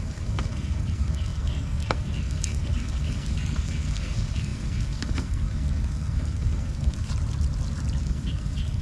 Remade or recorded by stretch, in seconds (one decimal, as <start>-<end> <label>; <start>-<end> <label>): 0.0-7.1 remade; 7.1-8.0 recorded; 8.0-8.8 remade